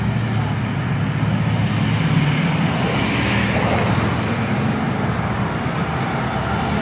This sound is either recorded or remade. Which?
recorded